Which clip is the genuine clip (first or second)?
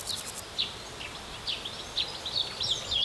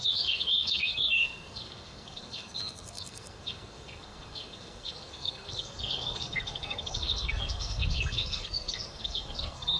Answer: first